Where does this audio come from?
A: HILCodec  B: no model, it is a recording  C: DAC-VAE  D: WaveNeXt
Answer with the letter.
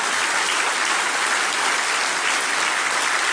B